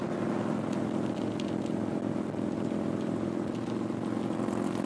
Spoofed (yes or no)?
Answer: no